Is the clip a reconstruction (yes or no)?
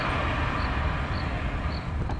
no